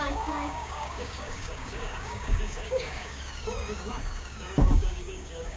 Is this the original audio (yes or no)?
no